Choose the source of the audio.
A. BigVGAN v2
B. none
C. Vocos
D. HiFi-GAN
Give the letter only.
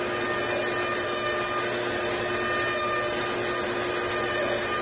B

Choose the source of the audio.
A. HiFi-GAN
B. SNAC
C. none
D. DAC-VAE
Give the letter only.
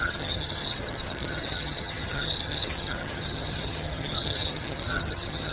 A